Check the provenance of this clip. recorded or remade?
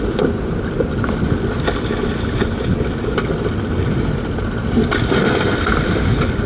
recorded